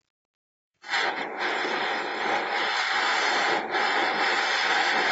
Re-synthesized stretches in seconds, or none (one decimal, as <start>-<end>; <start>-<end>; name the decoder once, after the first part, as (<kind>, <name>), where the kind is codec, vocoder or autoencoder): 0.4-1.6 (vocoder, Vocos)